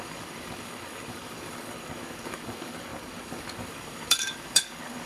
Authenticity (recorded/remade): remade